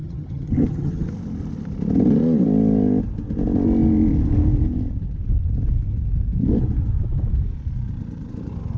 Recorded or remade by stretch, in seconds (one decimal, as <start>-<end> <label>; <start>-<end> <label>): 0.0-1.1 remade; 1.1-8.8 recorded